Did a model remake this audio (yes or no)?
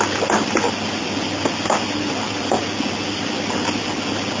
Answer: no